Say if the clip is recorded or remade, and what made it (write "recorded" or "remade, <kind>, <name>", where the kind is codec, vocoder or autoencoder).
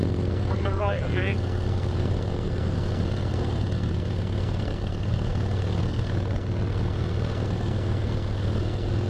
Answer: remade, codec, SNAC